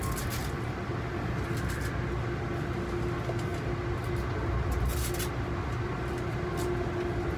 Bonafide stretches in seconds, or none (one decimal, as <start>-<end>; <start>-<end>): 0.0-7.4